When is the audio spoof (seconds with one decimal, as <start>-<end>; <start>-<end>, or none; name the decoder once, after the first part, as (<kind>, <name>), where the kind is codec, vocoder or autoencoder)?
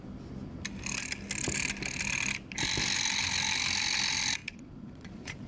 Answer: 4.4-5.5 (vocoder, Vocos)